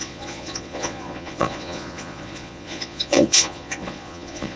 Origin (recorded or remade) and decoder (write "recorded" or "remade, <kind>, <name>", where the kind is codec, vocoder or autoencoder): remade, vocoder, Vocos